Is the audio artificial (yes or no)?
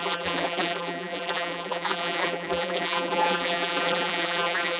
yes